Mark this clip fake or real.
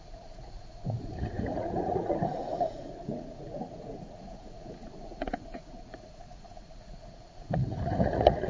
fake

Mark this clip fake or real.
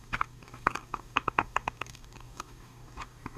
fake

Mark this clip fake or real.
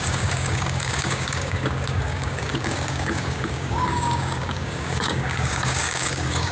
fake